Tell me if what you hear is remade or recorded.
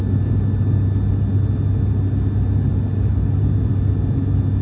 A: recorded